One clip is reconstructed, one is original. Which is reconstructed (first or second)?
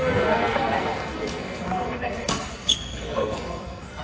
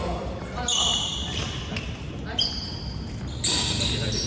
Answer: first